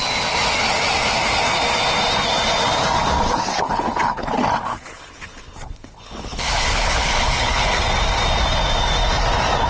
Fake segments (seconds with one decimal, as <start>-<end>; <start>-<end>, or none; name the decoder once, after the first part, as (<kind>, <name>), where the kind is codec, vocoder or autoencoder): 3.5-4.3 (codec, HILCodec); 4.7-7.8